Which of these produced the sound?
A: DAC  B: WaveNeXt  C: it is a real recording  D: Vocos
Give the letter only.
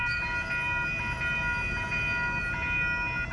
C